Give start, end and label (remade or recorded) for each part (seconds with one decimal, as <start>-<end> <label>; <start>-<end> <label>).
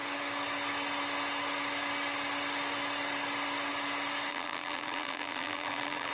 0.0-4.3 recorded; 4.3-6.1 remade